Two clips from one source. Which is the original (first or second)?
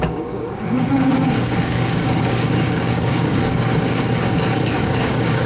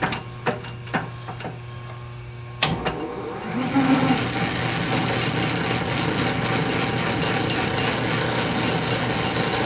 second